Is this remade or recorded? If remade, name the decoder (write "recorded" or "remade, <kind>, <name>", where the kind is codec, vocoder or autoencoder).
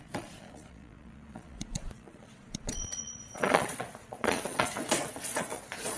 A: remade, vocoder, Vocos